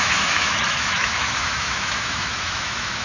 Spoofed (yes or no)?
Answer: yes